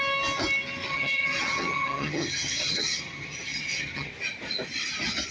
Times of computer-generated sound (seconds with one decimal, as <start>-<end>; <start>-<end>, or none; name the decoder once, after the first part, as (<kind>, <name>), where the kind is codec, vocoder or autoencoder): 0.9-4.1 (vocoder, HiFi-GAN)